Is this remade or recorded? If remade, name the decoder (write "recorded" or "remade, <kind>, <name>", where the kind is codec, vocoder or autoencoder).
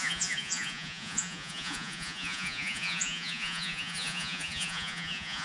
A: remade, vocoder, Vocos